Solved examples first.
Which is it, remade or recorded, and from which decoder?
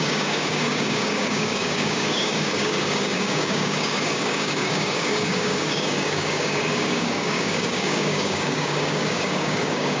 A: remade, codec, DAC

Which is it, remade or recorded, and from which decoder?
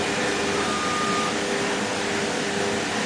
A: recorded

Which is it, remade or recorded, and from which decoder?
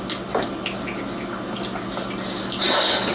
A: recorded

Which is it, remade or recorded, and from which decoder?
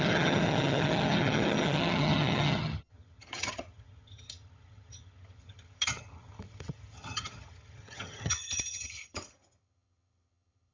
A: remade, vocoder, HiFi-GAN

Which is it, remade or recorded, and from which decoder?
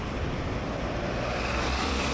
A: remade, vocoder, BigVGAN v2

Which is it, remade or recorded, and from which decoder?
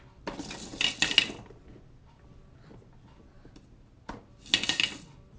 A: recorded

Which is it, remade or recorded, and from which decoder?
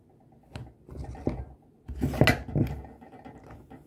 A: recorded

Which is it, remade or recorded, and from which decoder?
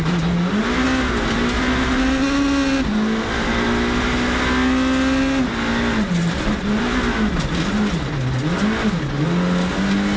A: recorded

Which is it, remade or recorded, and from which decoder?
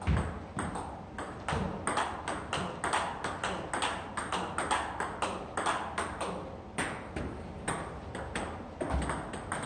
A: recorded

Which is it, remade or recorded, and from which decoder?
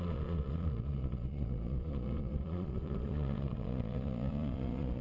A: remade, vocoder, Vocos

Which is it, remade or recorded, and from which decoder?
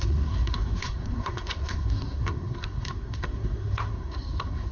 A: remade, codec, SNAC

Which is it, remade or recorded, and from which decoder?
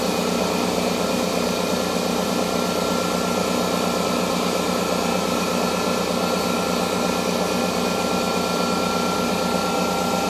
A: recorded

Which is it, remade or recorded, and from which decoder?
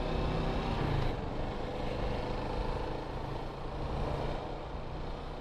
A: recorded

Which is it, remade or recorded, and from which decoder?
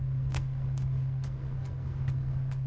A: remade, codec, SNAC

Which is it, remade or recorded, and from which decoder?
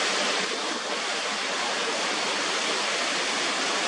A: recorded